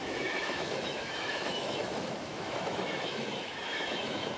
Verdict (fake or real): fake